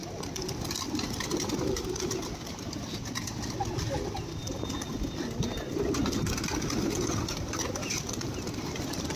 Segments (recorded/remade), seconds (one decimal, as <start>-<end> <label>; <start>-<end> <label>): 0.0-9.2 recorded

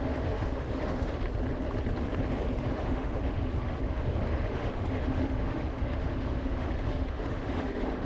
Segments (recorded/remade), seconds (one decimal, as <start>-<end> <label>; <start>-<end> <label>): 0.0-1.2 remade; 1.2-2.6 recorded; 2.6-8.1 remade

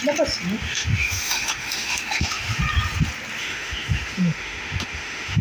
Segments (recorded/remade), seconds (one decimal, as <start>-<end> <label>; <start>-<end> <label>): 0.0-0.6 recorded; 0.6-2.6 remade; 2.6-3.4 recorded; 3.4-5.4 remade

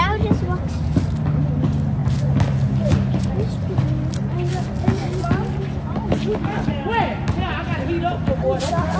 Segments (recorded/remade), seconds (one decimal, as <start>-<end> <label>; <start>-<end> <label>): 0.0-9.0 recorded

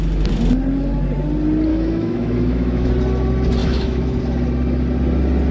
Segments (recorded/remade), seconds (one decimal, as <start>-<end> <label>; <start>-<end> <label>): 0.0-1.7 recorded; 1.7-2.9 remade; 2.9-3.6 recorded; 3.6-4.2 remade; 4.2-5.5 recorded

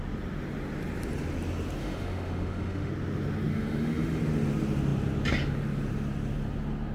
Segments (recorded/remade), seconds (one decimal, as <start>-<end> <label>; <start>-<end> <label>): 0.0-1.8 recorded; 1.8-2.9 remade; 2.9-3.5 recorded; 3.5-4.2 remade; 4.2-6.9 recorded

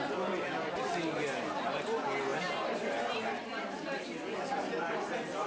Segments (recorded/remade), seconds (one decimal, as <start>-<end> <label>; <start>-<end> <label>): 0.0-5.5 recorded